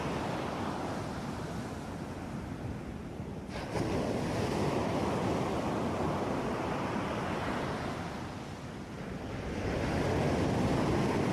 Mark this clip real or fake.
real